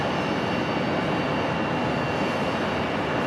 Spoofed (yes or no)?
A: no